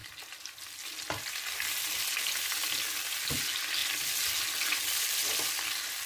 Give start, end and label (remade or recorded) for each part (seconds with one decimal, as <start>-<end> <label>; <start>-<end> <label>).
0.0-6.1 recorded